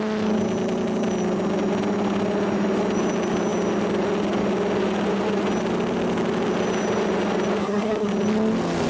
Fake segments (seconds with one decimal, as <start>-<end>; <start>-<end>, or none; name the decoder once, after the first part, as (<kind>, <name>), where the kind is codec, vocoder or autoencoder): 7.6-8.1 (codec, SNAC)